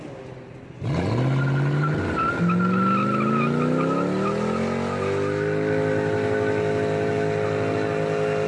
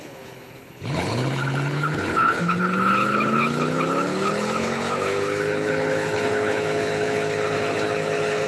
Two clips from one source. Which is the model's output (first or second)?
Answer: second